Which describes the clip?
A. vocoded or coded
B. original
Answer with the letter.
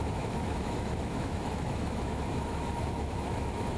A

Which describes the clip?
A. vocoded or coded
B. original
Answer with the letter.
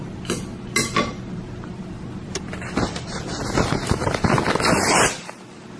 B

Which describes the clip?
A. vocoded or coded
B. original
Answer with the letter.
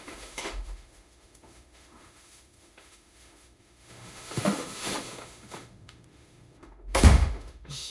A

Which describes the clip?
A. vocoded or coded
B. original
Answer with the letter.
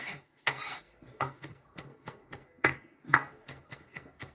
A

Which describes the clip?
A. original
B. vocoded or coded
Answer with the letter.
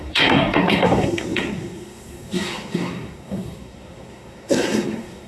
B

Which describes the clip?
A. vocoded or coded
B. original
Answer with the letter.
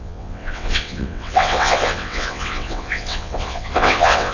A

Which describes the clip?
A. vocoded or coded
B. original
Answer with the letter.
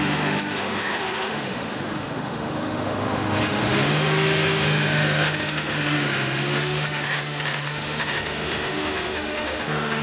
A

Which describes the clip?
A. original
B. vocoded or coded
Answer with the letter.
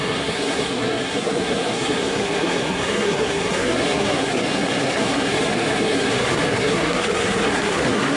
B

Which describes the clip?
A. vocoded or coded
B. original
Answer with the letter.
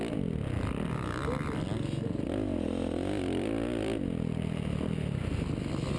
B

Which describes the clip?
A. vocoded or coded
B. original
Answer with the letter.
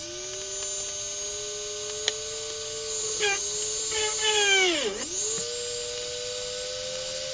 B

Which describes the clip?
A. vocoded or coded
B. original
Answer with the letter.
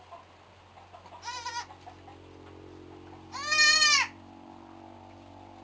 B